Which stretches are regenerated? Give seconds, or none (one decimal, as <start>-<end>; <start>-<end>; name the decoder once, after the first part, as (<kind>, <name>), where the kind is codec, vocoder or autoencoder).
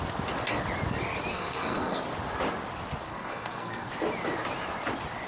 1.3-2.0 (codec, SNAC); 3.1-3.9